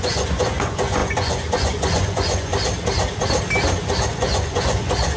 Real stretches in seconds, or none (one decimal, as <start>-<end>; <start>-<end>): 2.5-4.1